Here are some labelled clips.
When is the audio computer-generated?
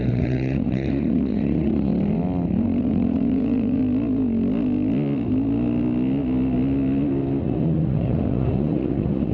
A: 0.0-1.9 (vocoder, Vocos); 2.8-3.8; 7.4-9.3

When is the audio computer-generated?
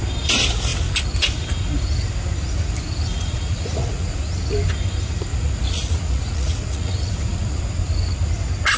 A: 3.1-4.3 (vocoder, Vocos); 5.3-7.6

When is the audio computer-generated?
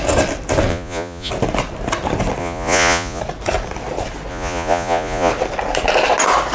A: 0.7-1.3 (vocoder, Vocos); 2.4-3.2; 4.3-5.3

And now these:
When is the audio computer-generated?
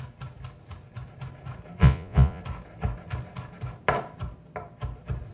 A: 1.8-2.4 (vocoder, Vocos)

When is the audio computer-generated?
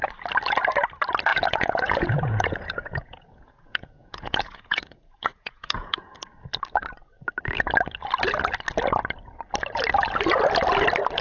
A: 1.3-6.2 (vocoder, Vocos)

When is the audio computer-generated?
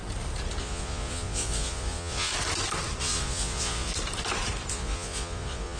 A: 0.6-2.3 (vocoder, Vocos); 3.0-3.9; 4.7-5.8